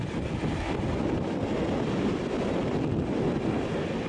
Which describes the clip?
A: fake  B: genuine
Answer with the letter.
B